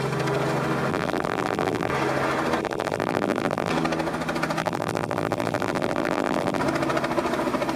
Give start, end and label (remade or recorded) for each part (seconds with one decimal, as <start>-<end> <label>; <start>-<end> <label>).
0.0-0.9 recorded; 0.9-1.9 remade; 1.9-2.6 recorded; 2.6-3.7 remade; 3.7-4.6 recorded; 4.6-6.6 remade; 6.6-7.8 recorded